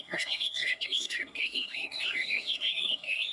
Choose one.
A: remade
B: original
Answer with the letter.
A